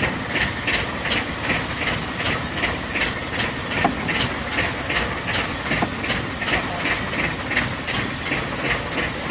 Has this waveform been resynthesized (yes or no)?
no